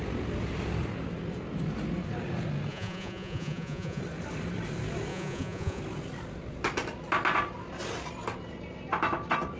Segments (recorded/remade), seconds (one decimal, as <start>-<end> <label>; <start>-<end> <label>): 0.0-2.7 recorded; 2.7-4.0 remade; 4.0-5.1 recorded; 5.1-5.8 remade; 5.8-9.6 recorded